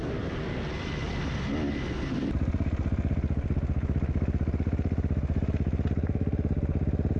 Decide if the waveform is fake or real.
real